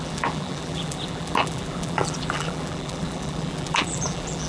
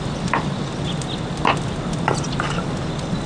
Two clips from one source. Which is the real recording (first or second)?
second